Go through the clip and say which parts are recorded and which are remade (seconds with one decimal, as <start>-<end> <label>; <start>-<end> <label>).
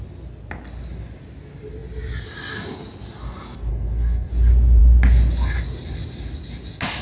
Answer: 0.0-3.7 recorded; 3.7-4.3 remade; 4.3-7.0 recorded